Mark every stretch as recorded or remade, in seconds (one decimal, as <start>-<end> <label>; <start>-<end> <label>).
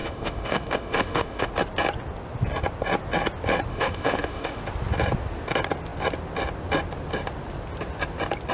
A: 0.0-1.5 remade; 1.5-3.7 recorded; 3.7-4.6 remade; 4.6-8.5 recorded